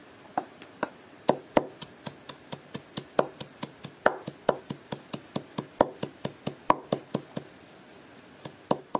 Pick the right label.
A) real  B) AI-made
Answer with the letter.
A